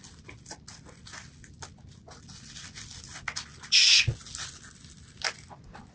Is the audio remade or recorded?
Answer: recorded